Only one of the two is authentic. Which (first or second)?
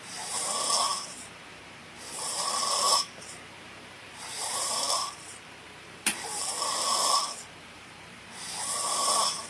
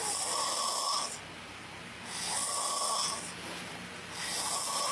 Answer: second